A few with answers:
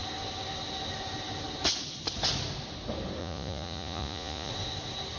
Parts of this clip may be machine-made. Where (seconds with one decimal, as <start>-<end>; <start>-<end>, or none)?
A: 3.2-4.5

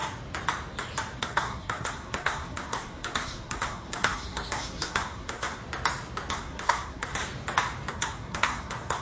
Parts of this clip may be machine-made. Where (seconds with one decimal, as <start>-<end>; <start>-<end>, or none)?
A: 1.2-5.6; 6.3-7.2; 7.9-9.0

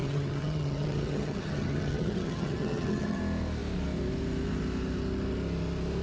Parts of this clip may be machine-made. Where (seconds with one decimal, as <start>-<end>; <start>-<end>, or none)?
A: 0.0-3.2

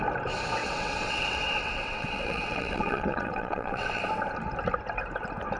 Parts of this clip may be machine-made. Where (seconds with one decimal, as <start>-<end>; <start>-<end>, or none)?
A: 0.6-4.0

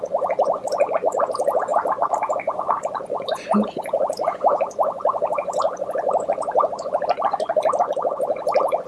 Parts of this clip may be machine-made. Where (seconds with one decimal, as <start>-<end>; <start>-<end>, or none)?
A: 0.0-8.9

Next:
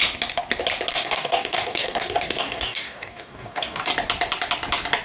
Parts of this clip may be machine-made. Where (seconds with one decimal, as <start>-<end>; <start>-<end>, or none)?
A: 0.9-3.9

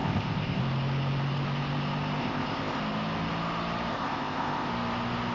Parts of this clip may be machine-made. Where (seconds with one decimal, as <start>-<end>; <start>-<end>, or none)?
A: 0.0-0.6; 2.2-2.8; 3.9-4.7